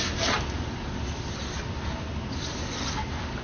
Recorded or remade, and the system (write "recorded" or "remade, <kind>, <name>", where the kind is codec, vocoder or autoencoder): recorded